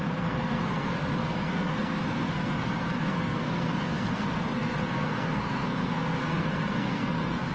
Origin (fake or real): fake